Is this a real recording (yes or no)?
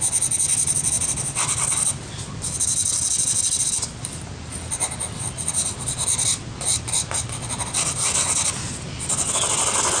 yes